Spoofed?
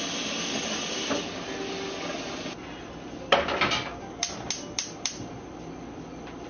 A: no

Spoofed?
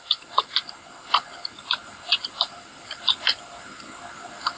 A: no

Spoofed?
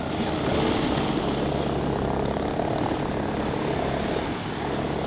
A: no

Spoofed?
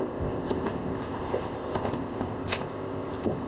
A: yes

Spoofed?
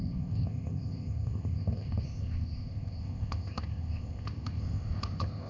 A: yes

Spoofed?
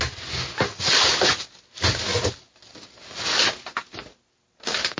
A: no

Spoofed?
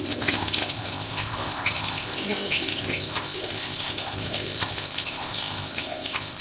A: yes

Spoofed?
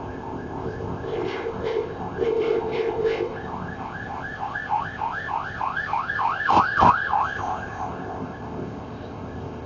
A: yes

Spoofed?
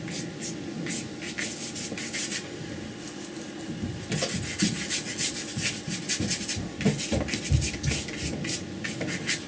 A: no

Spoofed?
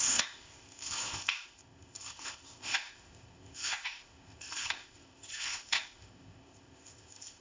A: yes